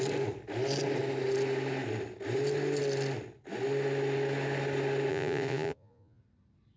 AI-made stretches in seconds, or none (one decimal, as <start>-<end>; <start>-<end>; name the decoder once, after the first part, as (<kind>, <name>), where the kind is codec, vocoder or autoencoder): 5.1-6.2 (vocoder, Vocos)